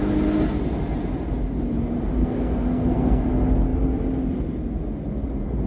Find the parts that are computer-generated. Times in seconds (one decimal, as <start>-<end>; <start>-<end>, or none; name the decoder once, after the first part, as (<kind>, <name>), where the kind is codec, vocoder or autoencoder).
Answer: 2.2-3.3 (codec, SNAC)